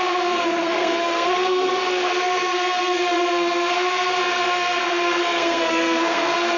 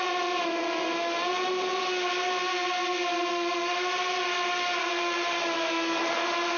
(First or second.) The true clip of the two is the second